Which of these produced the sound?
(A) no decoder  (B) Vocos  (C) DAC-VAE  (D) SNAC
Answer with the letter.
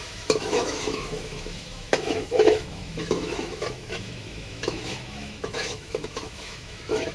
C